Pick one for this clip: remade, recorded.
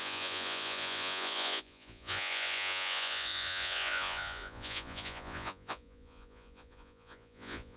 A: remade